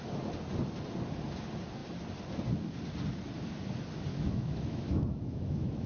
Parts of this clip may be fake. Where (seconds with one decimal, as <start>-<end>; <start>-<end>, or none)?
4.1-5.9